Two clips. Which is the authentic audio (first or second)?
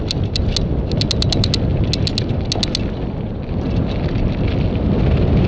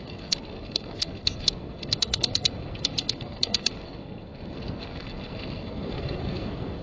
first